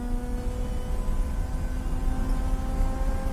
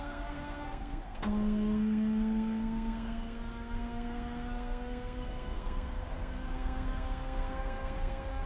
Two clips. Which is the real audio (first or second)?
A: first